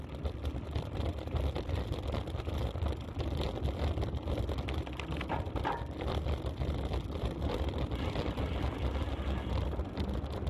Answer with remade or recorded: recorded